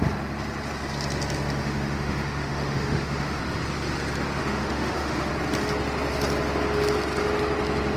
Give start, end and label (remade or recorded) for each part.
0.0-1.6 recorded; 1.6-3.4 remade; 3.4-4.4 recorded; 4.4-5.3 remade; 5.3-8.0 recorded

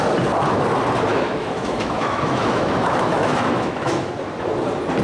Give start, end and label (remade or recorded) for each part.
0.0-1.1 recorded; 1.1-4.1 remade; 4.1-5.0 recorded

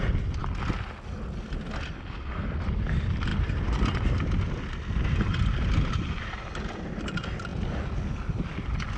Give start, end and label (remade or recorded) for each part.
0.0-9.0 recorded

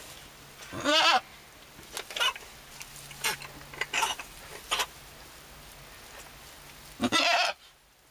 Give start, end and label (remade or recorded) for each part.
0.0-8.1 recorded

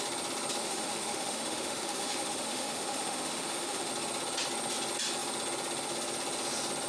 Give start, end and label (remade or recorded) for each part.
0.0-0.6 recorded; 0.6-3.9 remade; 3.9-6.9 recorded

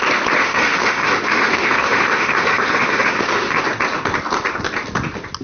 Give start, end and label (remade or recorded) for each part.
0.0-0.4 recorded; 0.4-3.6 remade; 3.6-5.4 recorded